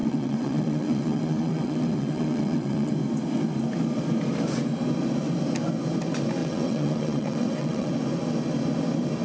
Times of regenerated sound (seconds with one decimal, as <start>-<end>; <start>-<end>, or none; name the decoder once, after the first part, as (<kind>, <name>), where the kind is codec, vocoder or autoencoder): 0.0-2.9 (vocoder, WaveNeXt); 6.4-7.9